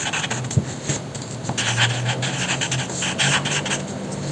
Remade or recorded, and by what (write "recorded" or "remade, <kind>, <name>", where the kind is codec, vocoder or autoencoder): recorded